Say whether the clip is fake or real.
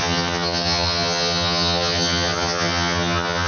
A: fake